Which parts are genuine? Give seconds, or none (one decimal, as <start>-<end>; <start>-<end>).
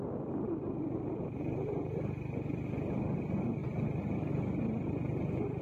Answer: 0.0-3.6; 4.6-5.6